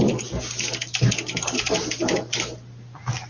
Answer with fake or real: real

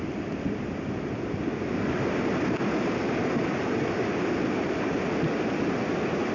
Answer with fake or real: real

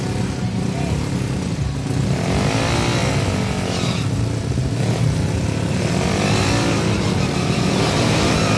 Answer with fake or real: real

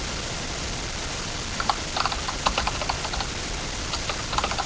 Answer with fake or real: real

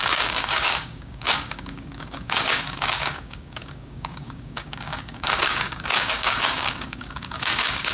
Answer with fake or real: fake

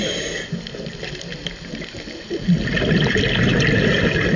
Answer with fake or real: real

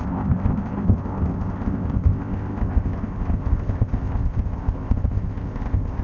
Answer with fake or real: fake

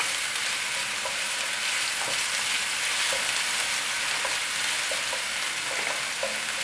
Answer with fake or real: real